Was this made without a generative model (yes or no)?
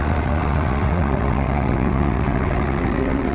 no